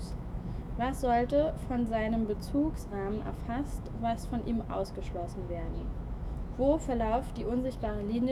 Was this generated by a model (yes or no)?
yes